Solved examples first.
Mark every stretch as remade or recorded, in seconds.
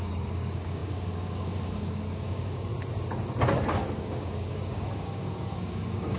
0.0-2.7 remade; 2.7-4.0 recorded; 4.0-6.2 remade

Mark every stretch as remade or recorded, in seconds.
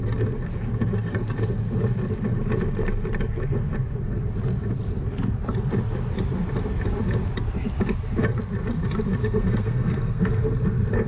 0.0-9.2 recorded; 9.2-10.4 remade; 10.4-11.1 recorded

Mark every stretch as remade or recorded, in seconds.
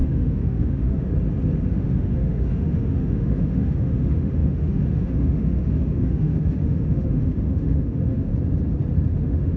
0.0-1.1 remade; 1.1-1.7 recorded; 1.7-8.3 remade; 8.3-9.1 recorded; 9.1-9.6 remade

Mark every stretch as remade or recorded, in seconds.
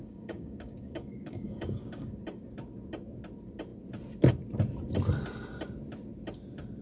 0.0-2.2 remade; 2.2-6.8 recorded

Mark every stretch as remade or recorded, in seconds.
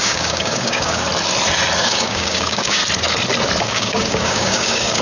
0.0-1.1 remade; 1.1-1.8 recorded; 1.8-2.8 remade; 2.8-3.6 recorded; 3.6-5.0 remade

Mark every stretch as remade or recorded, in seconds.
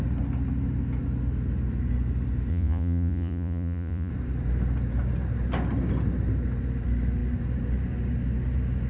0.0-2.5 recorded; 2.5-4.1 remade; 4.1-8.9 recorded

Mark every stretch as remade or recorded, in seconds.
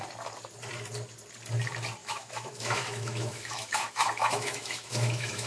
0.0-2.0 recorded; 2.0-5.5 remade